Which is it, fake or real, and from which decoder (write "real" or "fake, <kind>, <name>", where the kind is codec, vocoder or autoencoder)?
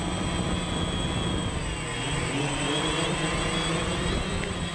real